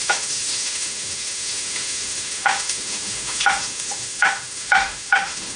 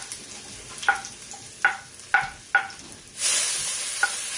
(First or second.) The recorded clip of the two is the second